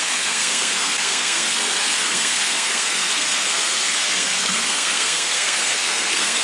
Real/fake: fake